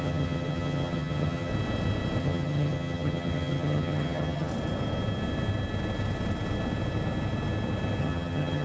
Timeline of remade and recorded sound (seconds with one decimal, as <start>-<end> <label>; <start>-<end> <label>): 0.0-1.5 remade; 1.5-2.2 recorded; 2.2-4.5 remade; 4.5-8.0 recorded; 8.0-8.6 remade

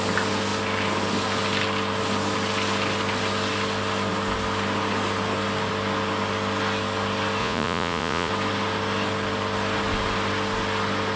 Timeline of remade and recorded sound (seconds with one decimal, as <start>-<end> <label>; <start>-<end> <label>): 0.0-7.4 recorded; 7.4-8.3 remade; 8.3-11.2 recorded